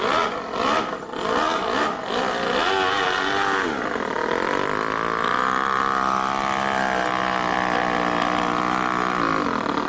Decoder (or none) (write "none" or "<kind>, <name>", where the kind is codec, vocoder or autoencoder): none